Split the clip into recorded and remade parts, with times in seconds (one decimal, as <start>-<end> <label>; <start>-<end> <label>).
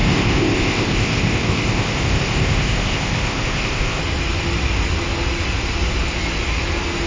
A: 0.0-4.0 remade; 4.0-7.1 recorded